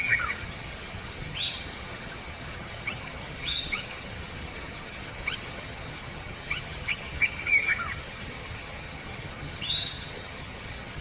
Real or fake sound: fake